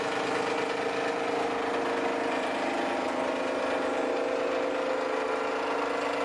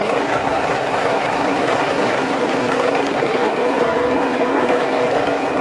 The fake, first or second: second